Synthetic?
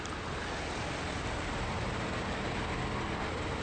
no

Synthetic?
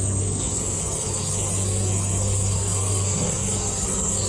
yes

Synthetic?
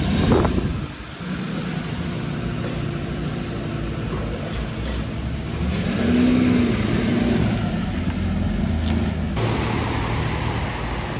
no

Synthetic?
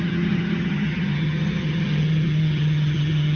yes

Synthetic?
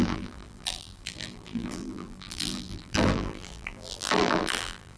yes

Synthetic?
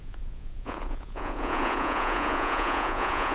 yes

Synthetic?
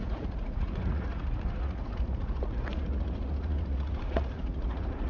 yes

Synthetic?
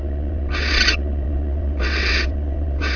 yes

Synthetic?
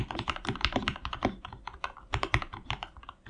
yes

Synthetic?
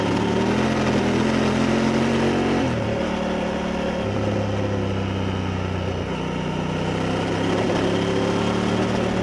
no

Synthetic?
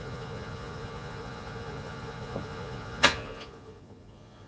yes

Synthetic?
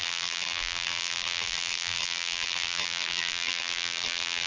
yes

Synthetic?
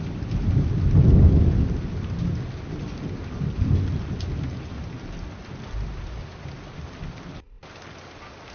no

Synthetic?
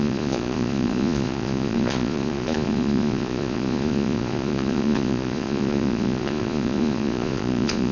yes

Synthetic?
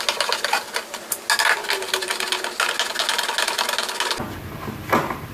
no